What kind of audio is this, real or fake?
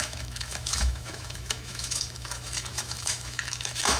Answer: fake